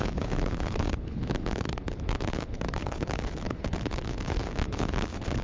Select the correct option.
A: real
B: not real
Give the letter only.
B